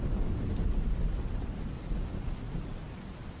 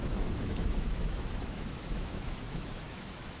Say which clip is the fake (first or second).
second